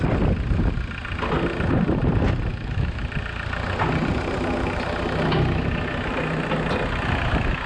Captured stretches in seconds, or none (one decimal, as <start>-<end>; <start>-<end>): 0.0-2.5; 3.0-7.7